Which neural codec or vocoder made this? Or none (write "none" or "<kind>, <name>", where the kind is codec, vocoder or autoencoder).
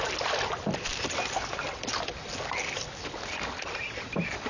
none